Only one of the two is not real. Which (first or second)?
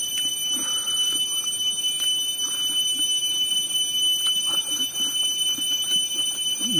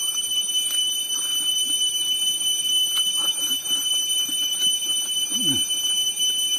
second